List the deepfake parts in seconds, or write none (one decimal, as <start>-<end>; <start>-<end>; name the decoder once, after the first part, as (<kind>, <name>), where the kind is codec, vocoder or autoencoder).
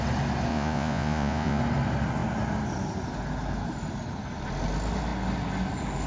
0.5-1.6 (vocoder, Vocos)